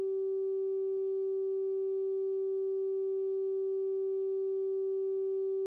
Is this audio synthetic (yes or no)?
yes